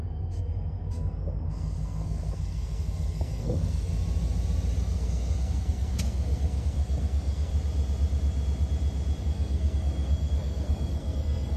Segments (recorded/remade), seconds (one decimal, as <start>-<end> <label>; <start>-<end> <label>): 0.0-3.9 remade; 3.9-4.8 recorded; 4.8-7.5 remade; 7.5-9.2 recorded; 9.2-11.6 remade